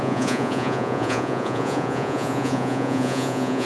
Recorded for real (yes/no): no